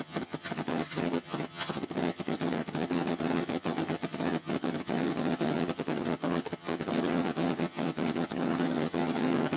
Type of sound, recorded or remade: remade